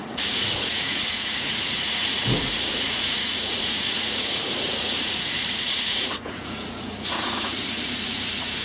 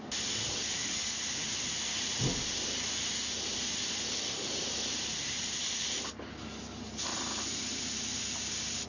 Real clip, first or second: second